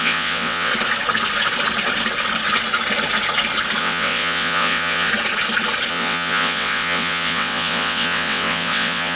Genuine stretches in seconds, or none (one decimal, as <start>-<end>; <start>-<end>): 0.7-3.8; 5.1-5.9